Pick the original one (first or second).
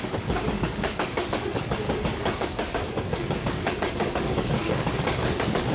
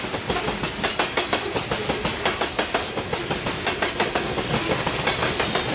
second